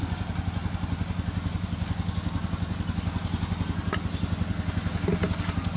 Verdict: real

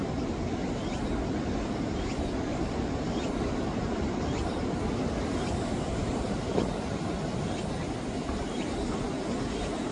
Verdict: real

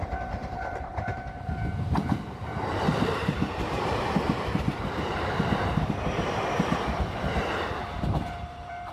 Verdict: fake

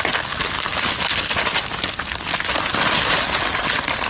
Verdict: real